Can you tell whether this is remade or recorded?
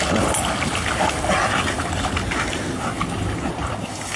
recorded